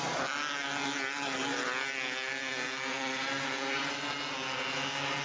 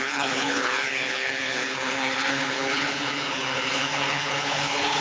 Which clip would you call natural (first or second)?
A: first